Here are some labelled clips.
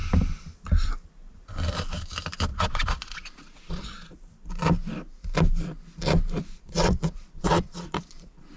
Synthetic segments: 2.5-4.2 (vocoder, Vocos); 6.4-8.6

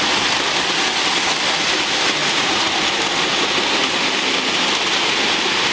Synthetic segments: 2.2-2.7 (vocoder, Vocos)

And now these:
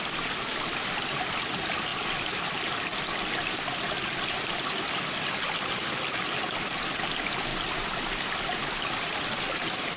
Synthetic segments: none